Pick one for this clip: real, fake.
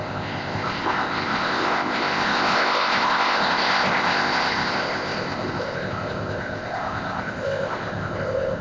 fake